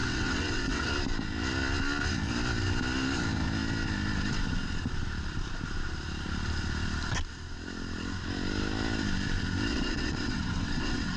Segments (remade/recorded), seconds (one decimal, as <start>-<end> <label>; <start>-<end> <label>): 0.0-0.9 remade; 0.9-9.7 recorded; 9.7-11.2 remade